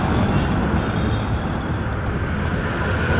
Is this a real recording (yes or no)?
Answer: yes